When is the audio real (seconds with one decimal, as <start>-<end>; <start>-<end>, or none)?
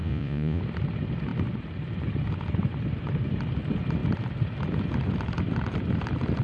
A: 0.6-6.4